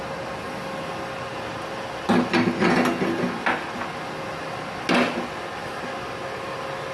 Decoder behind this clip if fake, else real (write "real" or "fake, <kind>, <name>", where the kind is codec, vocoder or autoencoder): real